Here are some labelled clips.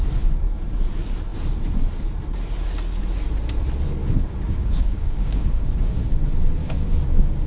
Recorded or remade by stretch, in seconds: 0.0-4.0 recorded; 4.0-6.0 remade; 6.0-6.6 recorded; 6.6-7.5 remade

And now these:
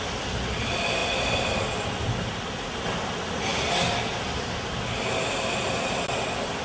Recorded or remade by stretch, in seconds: 0.0-6.6 recorded

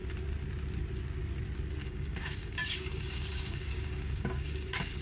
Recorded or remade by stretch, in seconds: 0.0-1.8 recorded; 1.8-5.0 remade

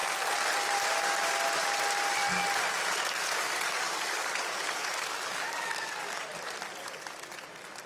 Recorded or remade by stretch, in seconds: 0.0-3.0 recorded; 3.0-6.3 remade; 6.3-7.9 recorded